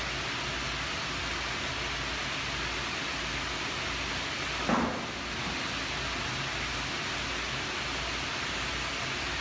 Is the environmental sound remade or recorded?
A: recorded